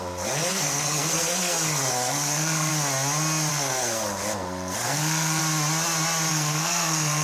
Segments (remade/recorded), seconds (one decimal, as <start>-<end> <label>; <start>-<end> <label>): 0.0-2.7 remade; 2.7-3.5 recorded; 3.5-5.4 remade; 5.4-6.3 recorded; 6.3-7.2 remade